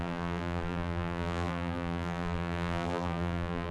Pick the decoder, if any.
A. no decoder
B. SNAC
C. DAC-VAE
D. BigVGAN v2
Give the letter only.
D